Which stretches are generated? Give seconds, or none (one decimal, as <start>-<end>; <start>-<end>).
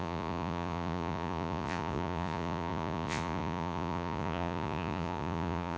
0.0-5.8